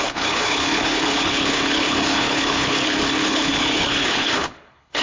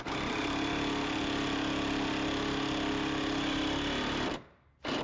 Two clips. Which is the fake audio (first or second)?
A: first